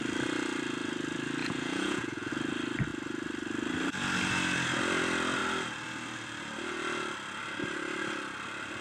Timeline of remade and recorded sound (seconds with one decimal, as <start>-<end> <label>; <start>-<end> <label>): 0.0-1.4 recorded; 1.4-2.3 remade; 2.3-8.8 recorded